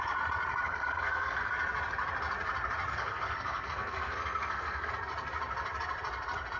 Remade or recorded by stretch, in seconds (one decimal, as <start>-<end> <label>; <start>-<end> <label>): 0.0-0.5 recorded; 0.5-1.5 remade; 1.5-2.9 recorded; 2.9-4.9 remade; 4.9-6.6 recorded